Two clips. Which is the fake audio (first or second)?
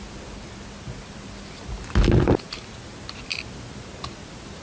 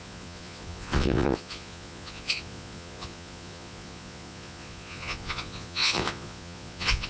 second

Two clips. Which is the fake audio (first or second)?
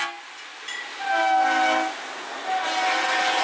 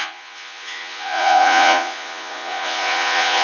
second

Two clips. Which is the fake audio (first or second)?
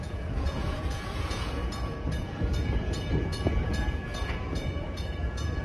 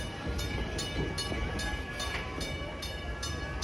first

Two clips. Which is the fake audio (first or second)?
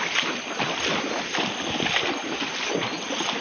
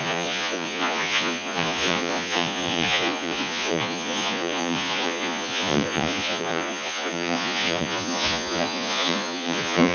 second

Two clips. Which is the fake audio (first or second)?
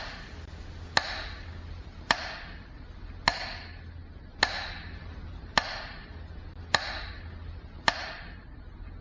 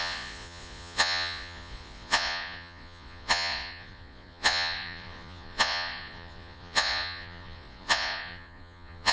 second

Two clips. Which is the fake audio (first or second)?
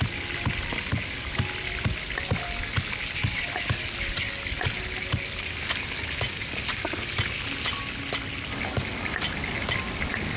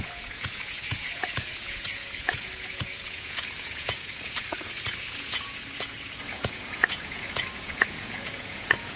second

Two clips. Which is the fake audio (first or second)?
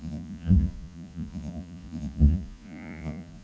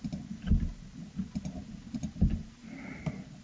first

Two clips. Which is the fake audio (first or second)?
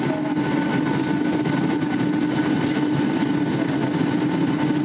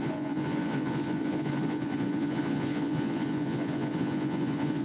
second